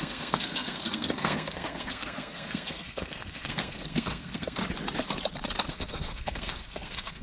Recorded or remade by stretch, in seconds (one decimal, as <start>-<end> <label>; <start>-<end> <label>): 0.0-4.6 remade; 4.6-5.7 recorded; 5.7-7.2 remade